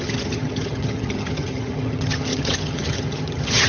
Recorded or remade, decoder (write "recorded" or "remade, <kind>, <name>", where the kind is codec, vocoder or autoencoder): remade, vocoder, HiFi-GAN